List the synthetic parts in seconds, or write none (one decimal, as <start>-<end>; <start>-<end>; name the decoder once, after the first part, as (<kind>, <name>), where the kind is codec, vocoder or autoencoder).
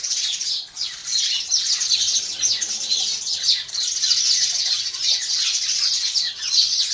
0.0-1.0 (vocoder, Vocos); 4.6-6.9